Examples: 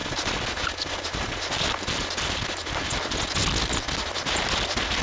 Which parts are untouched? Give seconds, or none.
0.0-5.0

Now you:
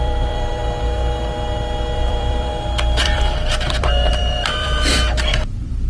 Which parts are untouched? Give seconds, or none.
0.6-2.0

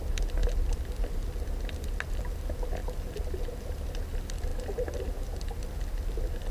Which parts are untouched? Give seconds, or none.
0.0-6.5

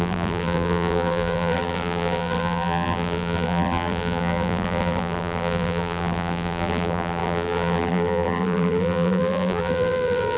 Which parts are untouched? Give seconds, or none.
none

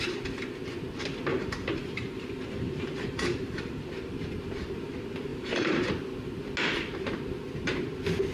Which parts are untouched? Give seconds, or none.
0.0-1.3; 3.8-5.3; 5.9-8.3